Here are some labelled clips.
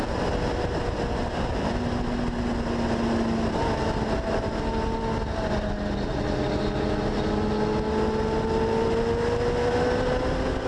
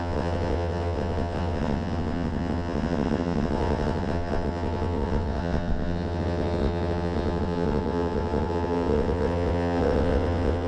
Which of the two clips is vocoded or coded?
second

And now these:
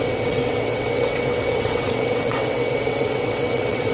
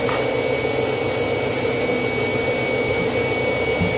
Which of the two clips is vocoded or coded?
first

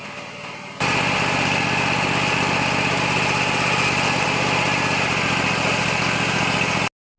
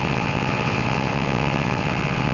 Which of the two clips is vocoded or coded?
second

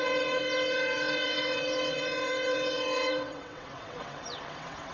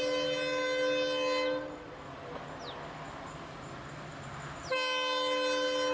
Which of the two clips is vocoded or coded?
first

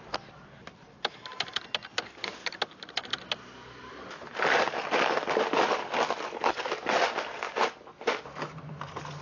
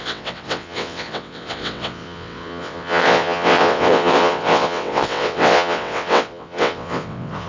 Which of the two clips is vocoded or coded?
second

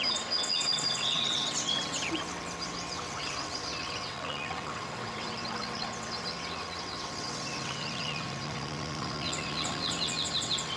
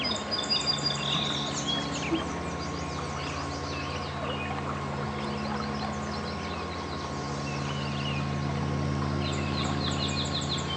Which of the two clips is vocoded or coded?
first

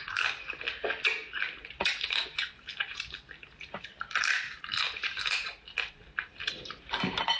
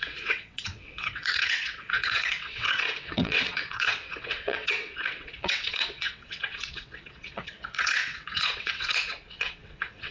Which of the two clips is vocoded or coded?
second